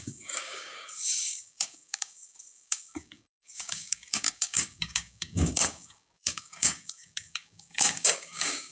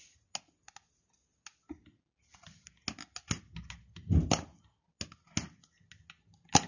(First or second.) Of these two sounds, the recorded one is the second